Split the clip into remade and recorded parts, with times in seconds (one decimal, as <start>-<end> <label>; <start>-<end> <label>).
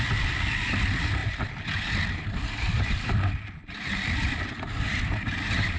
0.0-5.8 recorded